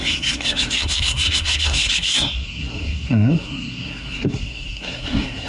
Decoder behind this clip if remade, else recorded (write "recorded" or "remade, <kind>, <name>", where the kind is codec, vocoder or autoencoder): remade, codec, SNAC